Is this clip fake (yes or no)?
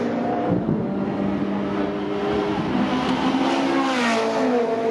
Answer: no